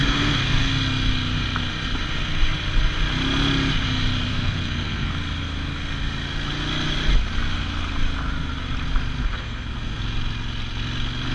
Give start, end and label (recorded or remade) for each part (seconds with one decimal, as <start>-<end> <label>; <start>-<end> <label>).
0.0-0.7 remade; 0.7-4.3 recorded; 4.3-5.1 remade; 5.1-9.2 recorded; 9.2-10.0 remade; 10.0-11.3 recorded